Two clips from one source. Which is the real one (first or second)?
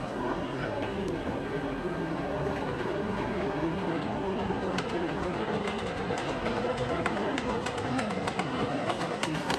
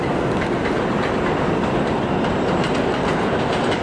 second